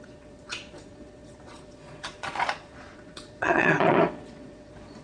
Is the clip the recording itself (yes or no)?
no